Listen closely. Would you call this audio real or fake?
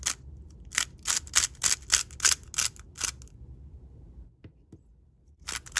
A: real